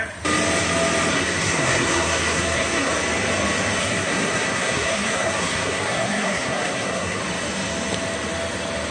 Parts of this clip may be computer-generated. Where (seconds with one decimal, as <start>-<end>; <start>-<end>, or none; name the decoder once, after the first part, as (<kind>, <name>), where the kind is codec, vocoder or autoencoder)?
1.1-2.9 (codec, SNAC); 3.8-7.2